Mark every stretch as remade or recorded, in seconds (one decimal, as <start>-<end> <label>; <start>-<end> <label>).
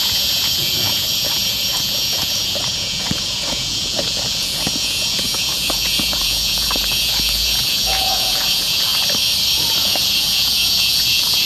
0.0-8.9 remade; 8.9-9.8 recorded; 9.8-11.5 remade